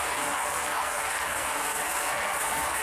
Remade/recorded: remade